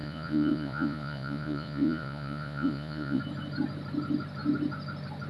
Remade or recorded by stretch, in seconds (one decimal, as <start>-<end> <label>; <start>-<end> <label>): 0.0-3.2 remade; 3.2-5.3 recorded